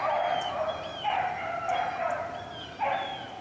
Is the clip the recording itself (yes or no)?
yes